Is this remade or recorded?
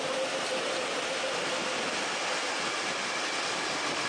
recorded